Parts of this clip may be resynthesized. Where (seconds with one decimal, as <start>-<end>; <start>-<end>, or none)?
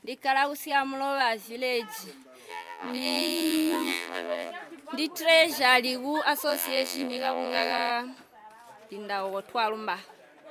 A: 2.5-4.5; 6.5-7.9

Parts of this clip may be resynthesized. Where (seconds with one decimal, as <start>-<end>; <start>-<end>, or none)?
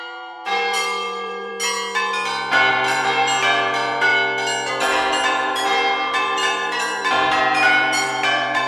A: 0.0-1.5; 2.7-4.1; 4.7-8.7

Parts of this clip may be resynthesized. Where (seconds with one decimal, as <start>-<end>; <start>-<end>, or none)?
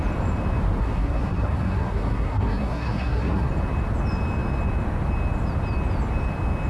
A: 0.8-3.5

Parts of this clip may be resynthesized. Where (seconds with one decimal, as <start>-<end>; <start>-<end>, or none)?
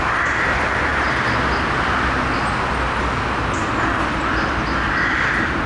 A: none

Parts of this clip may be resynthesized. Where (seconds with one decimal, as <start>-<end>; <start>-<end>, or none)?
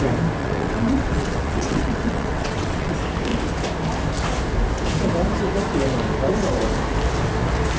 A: 0.4-2.9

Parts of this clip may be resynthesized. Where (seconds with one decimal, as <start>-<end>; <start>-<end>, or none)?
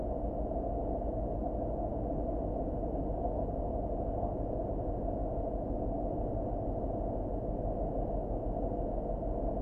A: none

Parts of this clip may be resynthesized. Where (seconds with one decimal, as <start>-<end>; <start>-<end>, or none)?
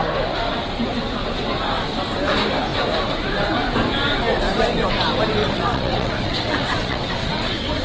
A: 5.4-7.8